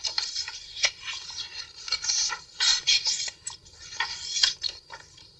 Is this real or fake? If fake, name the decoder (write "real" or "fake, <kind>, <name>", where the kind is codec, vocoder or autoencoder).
fake, vocoder, BigVGAN v2